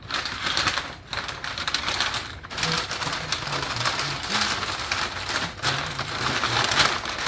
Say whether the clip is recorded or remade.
recorded